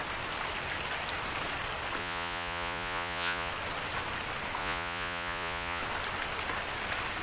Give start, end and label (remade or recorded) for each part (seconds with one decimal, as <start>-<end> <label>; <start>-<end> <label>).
0.0-2.0 recorded; 2.0-3.5 remade; 3.5-4.6 recorded; 4.6-5.8 remade; 5.8-7.2 recorded

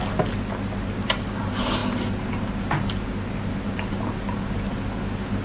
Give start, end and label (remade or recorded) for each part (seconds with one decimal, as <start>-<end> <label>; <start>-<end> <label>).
0.0-5.4 recorded

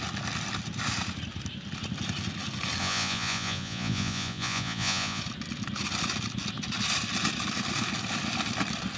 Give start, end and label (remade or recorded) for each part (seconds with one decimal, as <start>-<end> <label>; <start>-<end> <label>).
0.0-2.8 recorded; 2.8-5.2 remade; 5.2-9.0 recorded

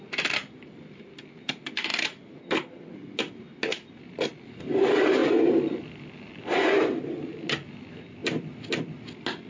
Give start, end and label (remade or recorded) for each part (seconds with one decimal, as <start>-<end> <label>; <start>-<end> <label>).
0.0-9.5 recorded

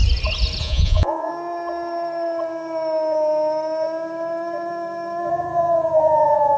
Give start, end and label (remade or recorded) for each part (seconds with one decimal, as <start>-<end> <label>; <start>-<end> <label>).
0.0-0.6 recorded; 0.6-1.3 remade; 1.3-5.3 recorded; 5.3-6.6 remade

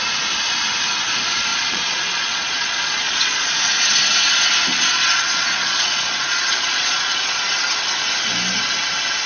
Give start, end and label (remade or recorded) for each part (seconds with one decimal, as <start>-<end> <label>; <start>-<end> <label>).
0.0-1.5 recorded; 1.5-3.6 remade; 3.6-4.7 recorded; 4.7-7.4 remade; 7.4-9.3 recorded

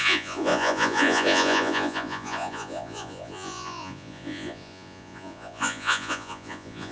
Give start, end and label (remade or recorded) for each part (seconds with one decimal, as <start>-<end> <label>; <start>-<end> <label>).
0.0-6.9 remade